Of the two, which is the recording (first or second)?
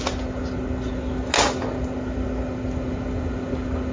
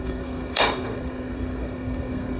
first